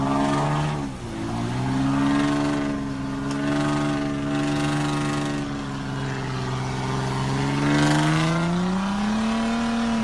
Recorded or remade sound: recorded